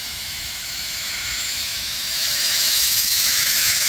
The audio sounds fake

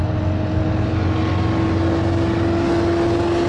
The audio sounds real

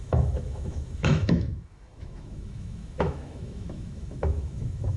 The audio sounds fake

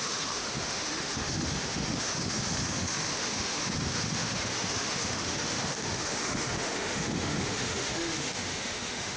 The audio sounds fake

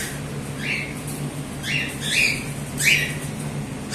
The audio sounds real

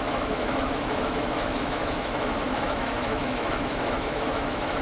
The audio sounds fake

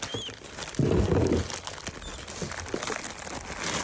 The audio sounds real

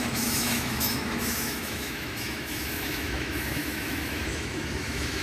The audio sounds fake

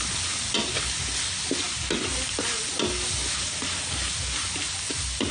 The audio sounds real